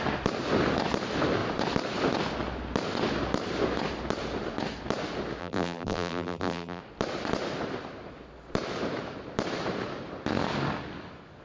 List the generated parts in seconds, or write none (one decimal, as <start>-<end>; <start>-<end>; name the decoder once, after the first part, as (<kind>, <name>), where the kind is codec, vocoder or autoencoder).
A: 5.4-6.8 (vocoder, BigVGAN v2)